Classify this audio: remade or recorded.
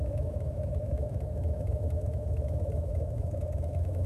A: remade